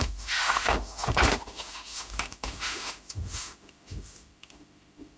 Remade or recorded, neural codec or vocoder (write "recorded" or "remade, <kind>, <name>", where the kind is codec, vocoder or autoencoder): remade, autoencoder, DAC-VAE